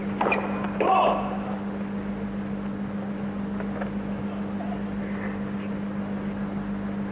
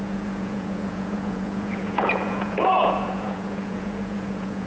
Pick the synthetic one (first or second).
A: second